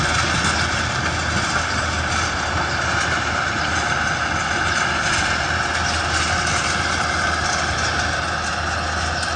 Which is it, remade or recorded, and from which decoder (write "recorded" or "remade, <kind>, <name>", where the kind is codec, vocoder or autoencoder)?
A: recorded